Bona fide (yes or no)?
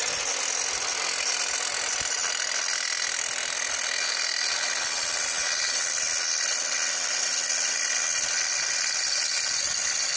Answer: yes